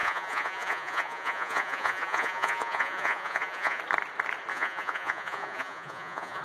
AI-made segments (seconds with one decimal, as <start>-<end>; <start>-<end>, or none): 0.0-3.8; 4.5-6.4